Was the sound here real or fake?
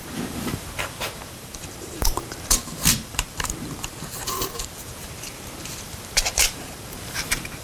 fake